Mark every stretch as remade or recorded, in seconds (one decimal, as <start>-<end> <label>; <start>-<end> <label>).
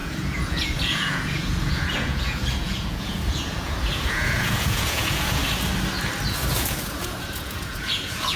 0.0-5.4 remade; 5.4-6.5 recorded; 6.5-8.4 remade